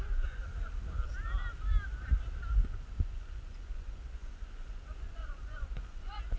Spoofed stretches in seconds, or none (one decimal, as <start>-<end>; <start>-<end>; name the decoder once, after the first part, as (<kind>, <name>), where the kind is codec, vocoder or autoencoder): 0.0-0.4 (vocoder, Vocos); 2.5-6.4